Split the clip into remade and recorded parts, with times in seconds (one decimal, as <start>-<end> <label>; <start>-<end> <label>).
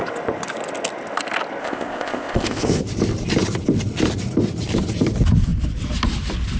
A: 0.0-1.6 recorded; 1.6-2.8 remade; 2.8-6.6 recorded